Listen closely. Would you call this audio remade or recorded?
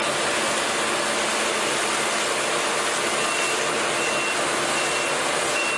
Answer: recorded